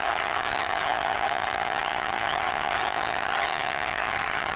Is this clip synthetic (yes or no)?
yes